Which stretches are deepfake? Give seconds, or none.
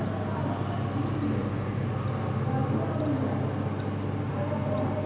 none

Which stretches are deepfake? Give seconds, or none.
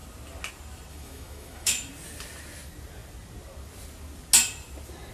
0.9-1.9 (autoencoder, DAC-VAE)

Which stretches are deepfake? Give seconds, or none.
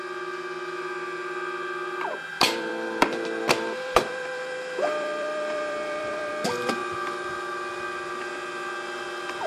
2.3-6.3 (vocoder, BigVGAN v2)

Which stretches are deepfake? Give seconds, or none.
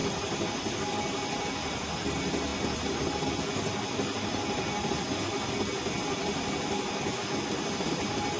none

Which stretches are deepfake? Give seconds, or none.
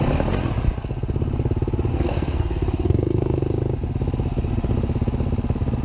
1.9-3.4 (codec, SNAC)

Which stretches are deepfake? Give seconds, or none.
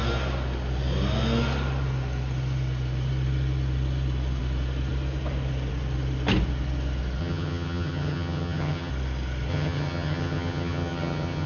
7.2-8.9 (vocoder, HiFi-GAN); 9.5-11.5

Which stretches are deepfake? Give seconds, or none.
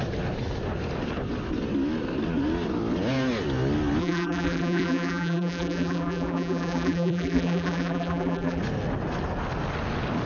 4.0-8.6 (vocoder, BigVGAN v2)